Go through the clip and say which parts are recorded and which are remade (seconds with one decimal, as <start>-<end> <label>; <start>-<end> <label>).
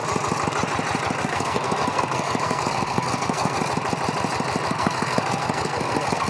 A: 0.0-1.2 recorded; 1.2-3.6 remade; 3.6-4.7 recorded; 4.7-6.3 remade